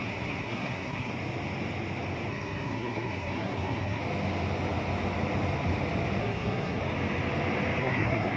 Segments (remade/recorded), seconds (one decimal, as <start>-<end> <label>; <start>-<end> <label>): 0.0-1.1 remade; 1.1-2.3 recorded; 2.3-4.0 remade; 4.0-6.2 recorded; 6.2-6.8 remade; 6.8-7.8 recorded; 7.8-8.4 remade